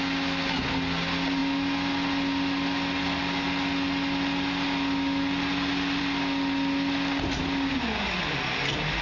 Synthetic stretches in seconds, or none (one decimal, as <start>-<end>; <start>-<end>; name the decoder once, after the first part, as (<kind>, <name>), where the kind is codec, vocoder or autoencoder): none